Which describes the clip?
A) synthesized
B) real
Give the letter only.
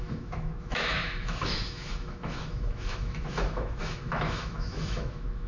A